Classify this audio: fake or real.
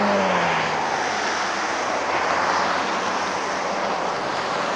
real